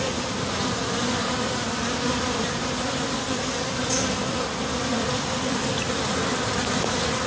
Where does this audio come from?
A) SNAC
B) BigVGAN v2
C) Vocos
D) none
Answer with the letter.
D